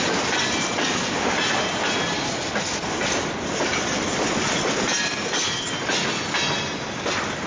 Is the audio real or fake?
real